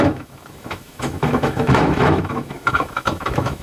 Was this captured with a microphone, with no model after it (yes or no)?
no